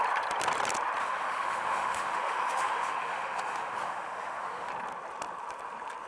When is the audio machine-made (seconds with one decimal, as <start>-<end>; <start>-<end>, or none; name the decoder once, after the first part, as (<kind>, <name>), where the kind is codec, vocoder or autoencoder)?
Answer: 1.0-4.7 (autoencoder, DAC-VAE)